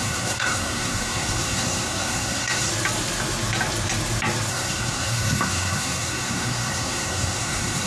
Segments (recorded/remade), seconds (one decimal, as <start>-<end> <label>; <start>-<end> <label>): 0.0-2.7 remade; 2.7-4.5 recorded; 4.5-7.9 remade